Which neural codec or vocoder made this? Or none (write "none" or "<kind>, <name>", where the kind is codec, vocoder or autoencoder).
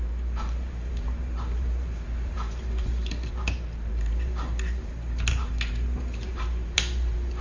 vocoder, BigVGAN v2